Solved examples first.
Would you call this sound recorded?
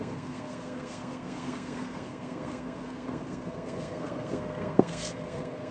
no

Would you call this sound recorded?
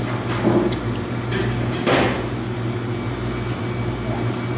yes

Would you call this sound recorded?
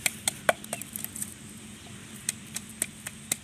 yes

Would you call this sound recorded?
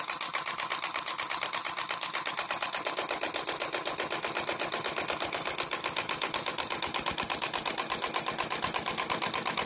yes